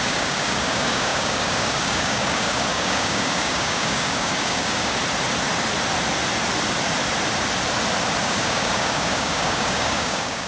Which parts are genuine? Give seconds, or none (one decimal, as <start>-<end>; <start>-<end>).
5.0-8.2